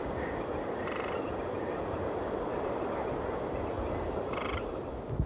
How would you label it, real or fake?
real